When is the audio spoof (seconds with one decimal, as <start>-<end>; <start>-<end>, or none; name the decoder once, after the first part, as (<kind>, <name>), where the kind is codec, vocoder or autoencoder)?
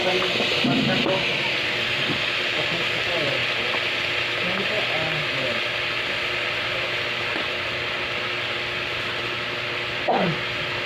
none